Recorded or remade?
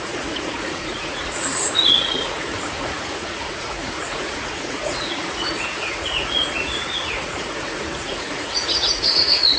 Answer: remade